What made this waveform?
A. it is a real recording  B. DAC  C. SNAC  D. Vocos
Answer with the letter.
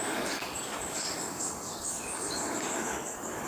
B